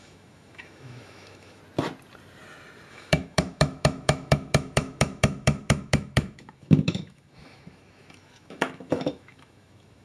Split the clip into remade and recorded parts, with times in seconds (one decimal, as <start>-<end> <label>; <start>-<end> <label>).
0.0-1.6 remade; 1.6-2.9 recorded; 2.9-10.0 remade